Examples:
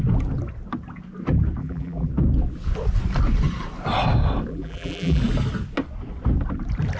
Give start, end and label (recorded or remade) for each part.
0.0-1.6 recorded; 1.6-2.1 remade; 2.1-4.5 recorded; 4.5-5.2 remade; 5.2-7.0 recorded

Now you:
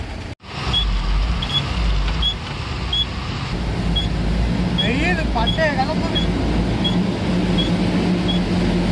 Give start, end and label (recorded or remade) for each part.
0.0-8.9 recorded

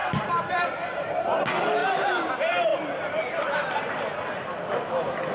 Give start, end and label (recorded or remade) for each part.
0.0-1.4 remade; 1.4-1.8 recorded; 1.8-2.3 remade; 2.3-5.3 recorded